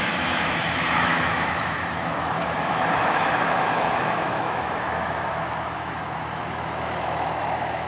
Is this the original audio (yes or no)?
no